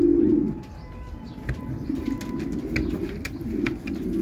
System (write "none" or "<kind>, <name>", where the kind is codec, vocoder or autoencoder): none